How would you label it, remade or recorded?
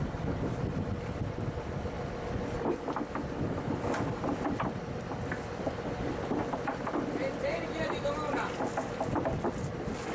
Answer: recorded